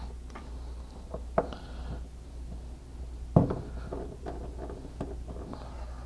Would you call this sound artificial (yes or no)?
no